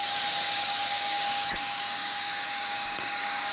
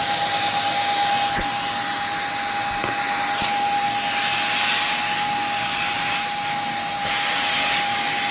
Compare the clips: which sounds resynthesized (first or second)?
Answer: first